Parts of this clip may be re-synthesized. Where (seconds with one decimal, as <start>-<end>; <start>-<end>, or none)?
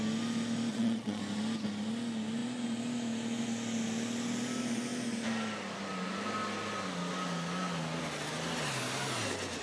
0.7-1.2